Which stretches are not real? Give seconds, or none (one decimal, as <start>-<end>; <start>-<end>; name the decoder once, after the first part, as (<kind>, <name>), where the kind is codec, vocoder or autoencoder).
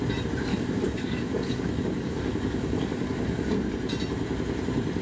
0.5-3.5 (codec, DAC)